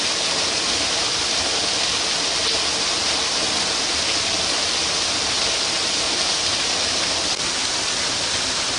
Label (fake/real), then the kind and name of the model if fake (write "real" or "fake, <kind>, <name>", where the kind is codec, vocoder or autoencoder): real